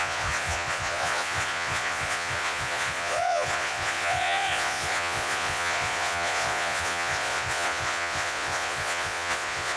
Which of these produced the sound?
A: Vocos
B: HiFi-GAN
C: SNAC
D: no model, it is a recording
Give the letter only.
A